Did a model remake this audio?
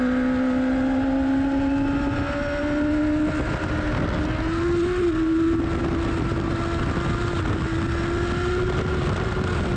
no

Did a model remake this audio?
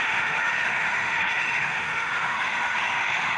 yes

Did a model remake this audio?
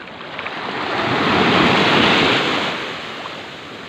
no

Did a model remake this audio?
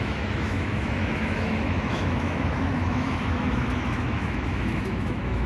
yes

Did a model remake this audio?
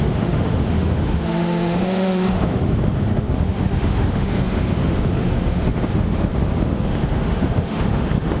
yes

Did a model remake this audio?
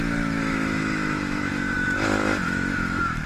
yes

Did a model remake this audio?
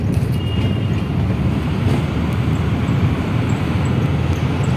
no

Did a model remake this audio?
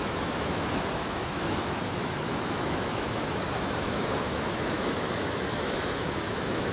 yes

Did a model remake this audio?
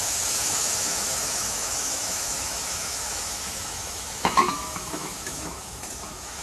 yes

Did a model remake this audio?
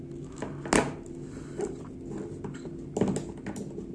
no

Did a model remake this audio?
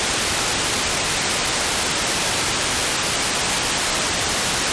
no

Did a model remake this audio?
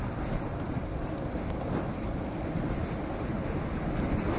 no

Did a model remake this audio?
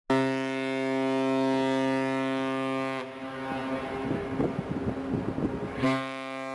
no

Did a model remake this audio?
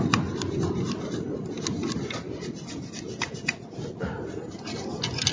no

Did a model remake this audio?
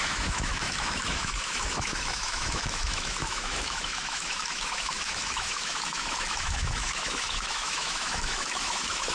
yes